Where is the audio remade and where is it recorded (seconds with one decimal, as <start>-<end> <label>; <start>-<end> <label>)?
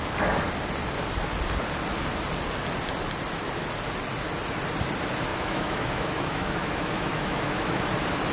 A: 0.0-5.3 recorded; 5.3-7.9 remade; 7.9-8.3 recorded